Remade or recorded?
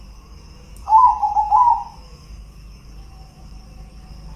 remade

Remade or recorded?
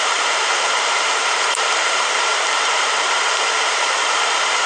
remade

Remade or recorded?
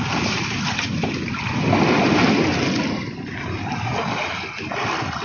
recorded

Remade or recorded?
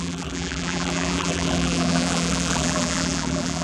remade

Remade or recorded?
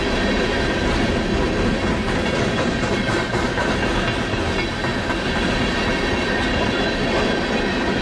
recorded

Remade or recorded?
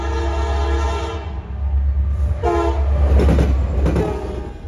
recorded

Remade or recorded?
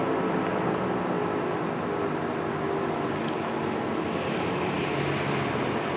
recorded